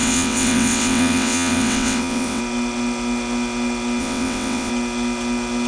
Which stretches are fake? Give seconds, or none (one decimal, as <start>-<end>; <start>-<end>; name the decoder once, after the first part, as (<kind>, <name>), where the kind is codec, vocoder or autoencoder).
0.0-2.4 (vocoder, WaveNeXt); 4.0-4.7